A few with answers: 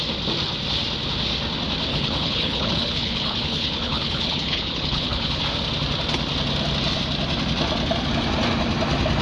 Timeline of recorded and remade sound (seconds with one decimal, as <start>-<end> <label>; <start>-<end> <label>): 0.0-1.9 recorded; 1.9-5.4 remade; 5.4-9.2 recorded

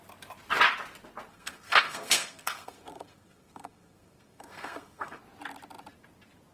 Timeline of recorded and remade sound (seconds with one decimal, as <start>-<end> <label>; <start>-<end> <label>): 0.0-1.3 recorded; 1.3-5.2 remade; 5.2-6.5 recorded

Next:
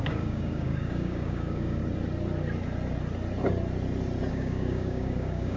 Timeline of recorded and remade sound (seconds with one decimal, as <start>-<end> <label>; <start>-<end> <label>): 0.0-1.8 remade; 1.8-4.3 recorded; 4.3-5.6 remade

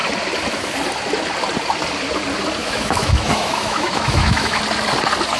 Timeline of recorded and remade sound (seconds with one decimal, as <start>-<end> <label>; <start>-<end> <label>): 0.0-2.6 recorded; 2.6-4.6 remade; 4.6-5.4 recorded

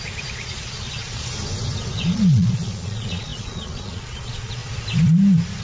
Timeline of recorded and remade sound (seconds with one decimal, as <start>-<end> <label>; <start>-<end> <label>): 0.0-1.3 remade; 1.3-2.0 recorded; 2.0-4.6 remade; 4.6-5.6 recorded

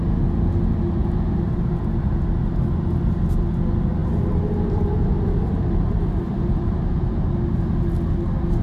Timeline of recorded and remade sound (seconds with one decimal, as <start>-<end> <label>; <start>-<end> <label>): 0.0-1.0 recorded; 1.0-1.8 remade; 1.8-4.0 recorded; 4.0-7.2 remade; 7.2-8.6 recorded